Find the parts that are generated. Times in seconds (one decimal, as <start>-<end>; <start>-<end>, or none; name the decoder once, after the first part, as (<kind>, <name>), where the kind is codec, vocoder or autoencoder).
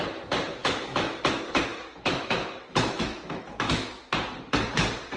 0.6-1.2 (autoencoder, DAC-VAE); 1.7-3.9